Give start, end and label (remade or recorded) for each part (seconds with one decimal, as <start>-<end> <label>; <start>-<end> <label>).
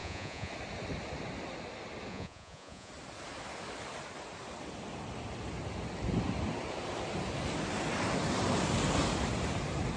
0.0-0.5 remade; 0.5-2.1 recorded; 2.1-2.9 remade; 2.9-10.0 recorded